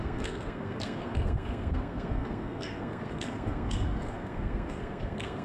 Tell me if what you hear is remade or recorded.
remade